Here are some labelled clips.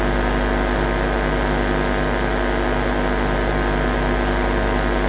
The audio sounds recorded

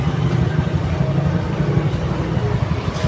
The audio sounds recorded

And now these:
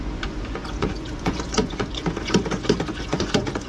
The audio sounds remade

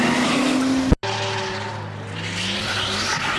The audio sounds recorded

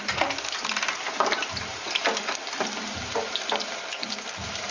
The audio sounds recorded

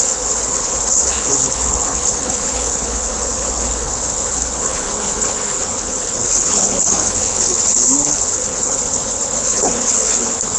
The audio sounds remade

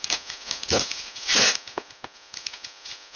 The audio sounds recorded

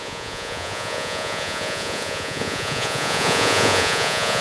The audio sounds remade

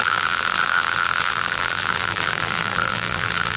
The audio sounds remade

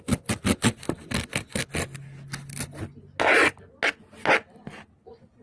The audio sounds recorded